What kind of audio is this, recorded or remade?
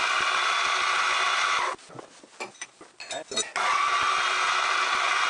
recorded